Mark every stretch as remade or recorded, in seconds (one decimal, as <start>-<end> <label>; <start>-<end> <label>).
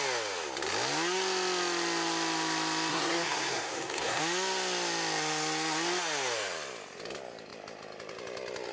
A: 0.0-2.9 recorded; 2.9-4.2 remade; 4.2-8.7 recorded